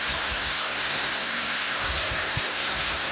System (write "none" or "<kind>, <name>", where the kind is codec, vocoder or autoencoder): codec, SNAC